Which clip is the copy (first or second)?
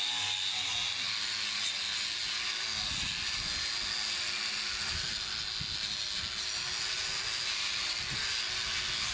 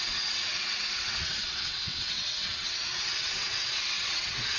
second